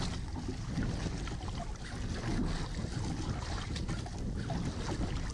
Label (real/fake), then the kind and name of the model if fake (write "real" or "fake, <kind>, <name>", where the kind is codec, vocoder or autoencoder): real